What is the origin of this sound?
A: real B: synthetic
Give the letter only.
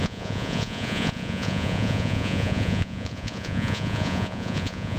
B